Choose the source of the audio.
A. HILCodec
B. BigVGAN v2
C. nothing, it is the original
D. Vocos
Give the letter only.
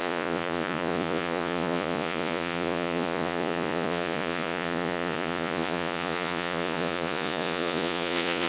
D